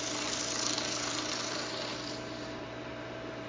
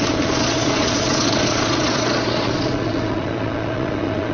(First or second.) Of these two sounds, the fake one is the second